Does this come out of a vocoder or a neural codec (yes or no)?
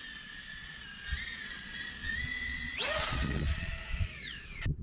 yes